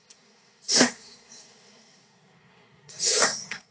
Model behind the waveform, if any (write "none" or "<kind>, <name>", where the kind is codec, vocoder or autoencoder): codec, SNAC